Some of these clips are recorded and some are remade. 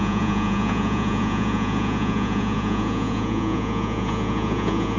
remade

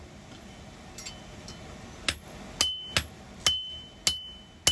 recorded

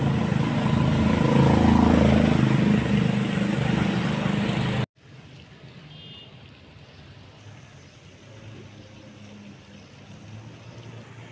recorded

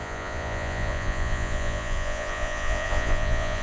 remade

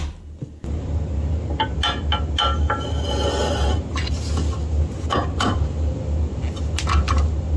recorded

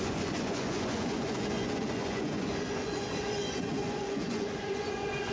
remade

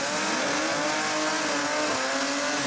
recorded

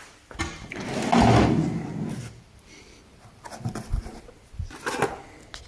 recorded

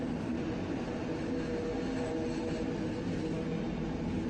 recorded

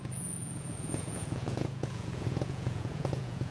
remade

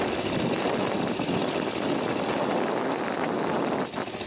recorded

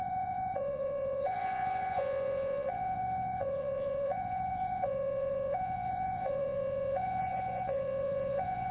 remade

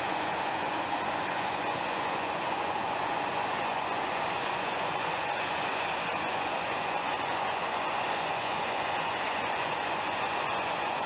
remade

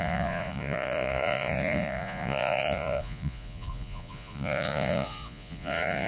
remade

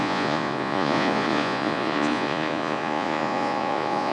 remade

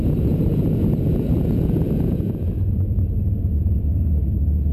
remade